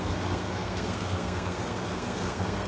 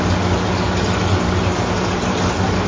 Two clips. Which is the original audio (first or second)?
second